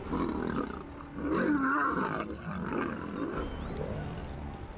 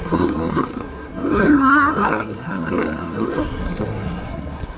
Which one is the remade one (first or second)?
second